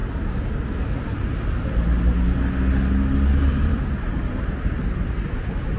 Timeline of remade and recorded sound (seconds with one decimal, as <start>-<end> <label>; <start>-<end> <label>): 0.0-3.5 recorded; 3.5-5.8 remade